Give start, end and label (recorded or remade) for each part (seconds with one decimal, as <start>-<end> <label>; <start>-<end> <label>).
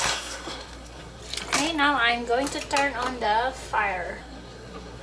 0.0-1.2 remade; 1.2-4.2 recorded; 4.2-5.0 remade